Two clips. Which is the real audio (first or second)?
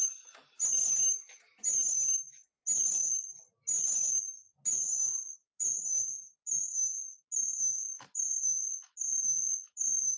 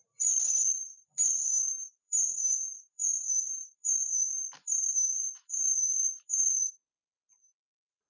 first